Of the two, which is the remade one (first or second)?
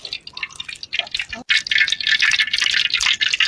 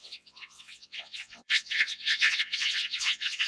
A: second